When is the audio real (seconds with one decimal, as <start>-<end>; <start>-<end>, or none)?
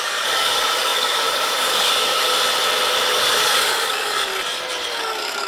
2.3-3.1; 4.3-4.9